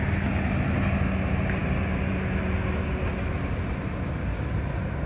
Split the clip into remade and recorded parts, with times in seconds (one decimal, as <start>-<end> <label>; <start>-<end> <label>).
0.0-5.1 recorded